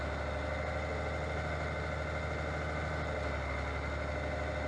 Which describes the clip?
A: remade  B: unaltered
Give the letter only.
B